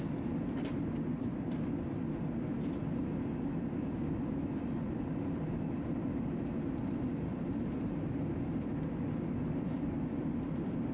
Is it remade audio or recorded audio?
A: recorded